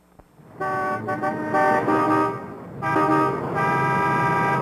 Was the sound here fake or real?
real